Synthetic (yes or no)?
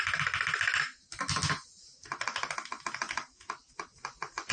no